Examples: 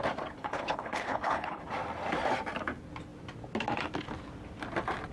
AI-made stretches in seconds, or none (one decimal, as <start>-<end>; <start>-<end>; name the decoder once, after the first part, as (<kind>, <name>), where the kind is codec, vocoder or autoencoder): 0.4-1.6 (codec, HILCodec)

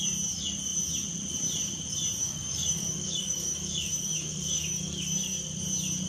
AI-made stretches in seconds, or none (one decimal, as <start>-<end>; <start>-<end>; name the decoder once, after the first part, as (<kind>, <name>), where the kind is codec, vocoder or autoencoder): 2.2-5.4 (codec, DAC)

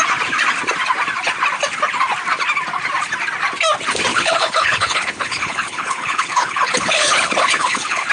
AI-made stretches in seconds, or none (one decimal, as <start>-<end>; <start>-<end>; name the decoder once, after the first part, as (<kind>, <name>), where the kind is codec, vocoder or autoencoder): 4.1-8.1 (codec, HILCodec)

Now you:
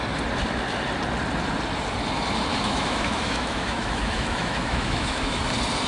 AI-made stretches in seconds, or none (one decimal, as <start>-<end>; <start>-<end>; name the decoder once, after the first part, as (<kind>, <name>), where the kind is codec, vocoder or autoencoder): 2.5-5.4 (autoencoder, DAC-VAE)